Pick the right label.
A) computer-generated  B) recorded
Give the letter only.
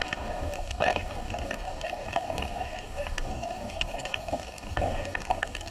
A